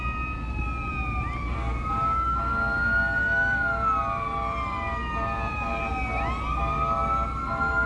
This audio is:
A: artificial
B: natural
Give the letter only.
B